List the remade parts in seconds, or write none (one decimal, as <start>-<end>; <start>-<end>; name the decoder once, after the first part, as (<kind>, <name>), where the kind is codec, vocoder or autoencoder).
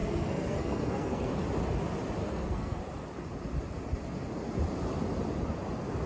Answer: 0.0-1.3 (codec, SNAC); 2.2-2.8